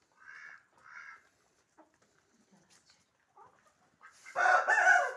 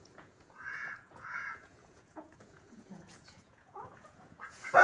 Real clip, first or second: first